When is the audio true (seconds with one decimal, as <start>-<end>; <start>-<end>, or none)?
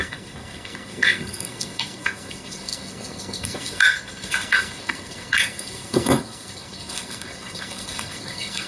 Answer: none